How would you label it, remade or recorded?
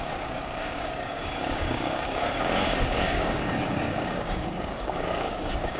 remade